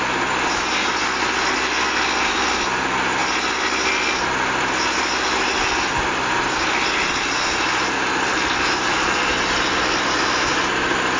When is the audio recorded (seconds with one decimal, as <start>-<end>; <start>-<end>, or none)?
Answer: 0.0-11.2